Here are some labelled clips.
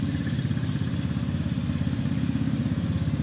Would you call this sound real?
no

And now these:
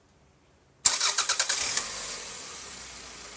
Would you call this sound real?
yes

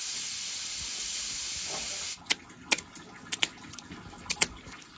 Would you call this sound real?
yes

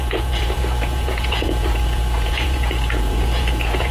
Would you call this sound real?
no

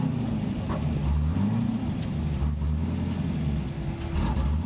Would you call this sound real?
yes